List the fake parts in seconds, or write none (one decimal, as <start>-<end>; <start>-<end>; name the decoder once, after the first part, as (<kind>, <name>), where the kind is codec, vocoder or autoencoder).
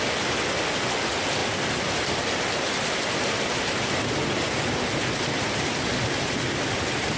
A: none